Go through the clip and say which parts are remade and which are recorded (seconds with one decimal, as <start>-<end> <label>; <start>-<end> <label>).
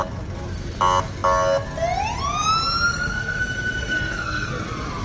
0.0-2.9 recorded; 2.9-3.4 remade; 3.4-3.8 recorded; 3.8-4.5 remade; 4.5-5.0 recorded